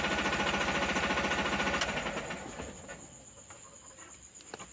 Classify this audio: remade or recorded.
recorded